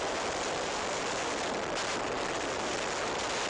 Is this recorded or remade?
recorded